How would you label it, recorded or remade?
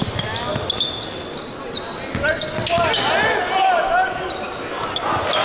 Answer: recorded